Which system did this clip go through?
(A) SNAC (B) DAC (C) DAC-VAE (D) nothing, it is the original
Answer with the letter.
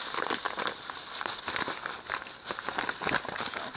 D